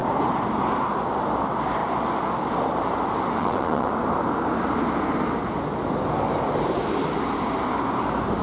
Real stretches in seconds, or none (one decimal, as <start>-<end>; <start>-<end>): 0.0-3.4; 3.9-8.4